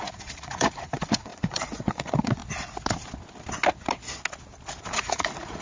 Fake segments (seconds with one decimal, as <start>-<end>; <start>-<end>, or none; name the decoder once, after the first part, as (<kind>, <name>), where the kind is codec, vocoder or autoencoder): 0.0-2.4 (vocoder, Vocos); 5.0-5.6